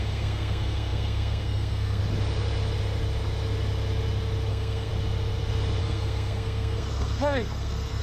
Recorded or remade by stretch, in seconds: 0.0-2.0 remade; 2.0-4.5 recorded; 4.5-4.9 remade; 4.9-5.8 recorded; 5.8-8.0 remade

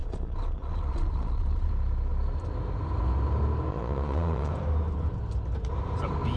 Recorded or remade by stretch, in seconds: 0.0-1.7 remade; 1.7-3.7 recorded; 3.7-4.5 remade; 4.5-6.4 recorded

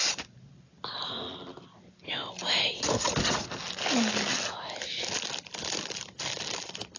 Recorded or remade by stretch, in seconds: 0.0-7.0 recorded

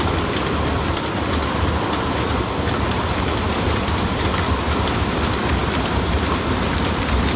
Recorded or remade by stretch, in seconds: 0.0-7.4 remade

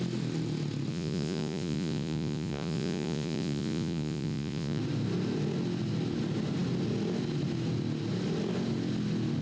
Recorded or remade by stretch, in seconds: 0.0-0.9 recorded; 0.9-4.8 remade; 4.8-9.4 recorded